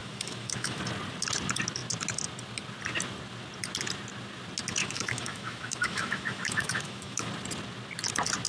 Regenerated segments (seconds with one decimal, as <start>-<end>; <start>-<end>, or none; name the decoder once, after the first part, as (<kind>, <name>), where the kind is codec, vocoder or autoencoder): 0.0-0.8 (autoencoder, DAC-VAE); 4.8-7.3